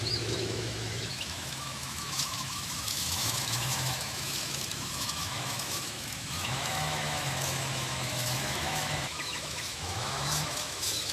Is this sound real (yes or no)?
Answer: no